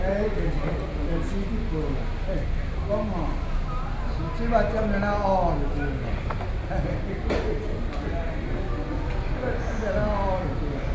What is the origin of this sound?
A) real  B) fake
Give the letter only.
A